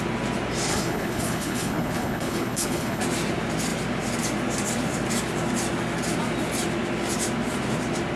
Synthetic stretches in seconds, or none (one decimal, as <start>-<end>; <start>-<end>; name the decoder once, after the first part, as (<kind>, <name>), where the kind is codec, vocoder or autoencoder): 0.7-3.0 (codec, HILCodec)

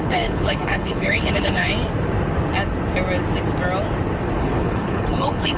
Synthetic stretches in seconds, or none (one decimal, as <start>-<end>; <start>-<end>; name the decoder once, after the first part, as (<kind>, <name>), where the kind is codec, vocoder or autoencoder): 0.0-1.7 (codec, HILCodec); 4.4-5.6

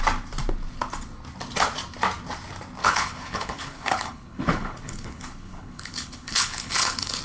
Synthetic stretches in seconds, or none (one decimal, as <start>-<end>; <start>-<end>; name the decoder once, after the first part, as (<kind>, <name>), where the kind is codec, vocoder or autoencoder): 2.8-7.2 (codec, HILCodec)

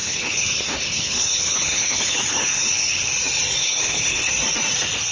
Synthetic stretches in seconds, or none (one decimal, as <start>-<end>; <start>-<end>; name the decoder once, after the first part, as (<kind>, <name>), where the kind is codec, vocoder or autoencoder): 0.0-3.1 (codec, HILCodec); 3.6-4.3

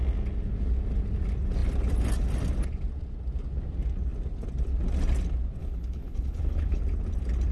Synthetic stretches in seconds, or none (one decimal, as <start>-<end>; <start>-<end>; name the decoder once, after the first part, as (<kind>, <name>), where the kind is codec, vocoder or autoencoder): 5.6-6.8 (codec, HILCodec)

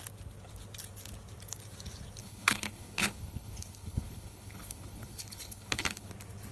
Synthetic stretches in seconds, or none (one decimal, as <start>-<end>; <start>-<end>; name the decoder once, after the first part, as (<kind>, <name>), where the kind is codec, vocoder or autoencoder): 2.2-6.1 (codec, HILCodec)

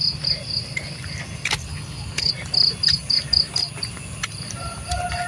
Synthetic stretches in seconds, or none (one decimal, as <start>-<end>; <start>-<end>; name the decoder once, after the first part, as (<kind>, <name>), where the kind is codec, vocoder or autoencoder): 1.7-2.3 (codec, HILCodec)

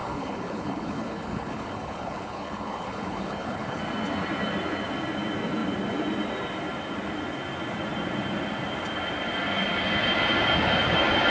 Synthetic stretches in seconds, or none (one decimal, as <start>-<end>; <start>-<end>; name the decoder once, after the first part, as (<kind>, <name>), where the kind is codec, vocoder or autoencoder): 0.0-3.8 (codec, HILCodec)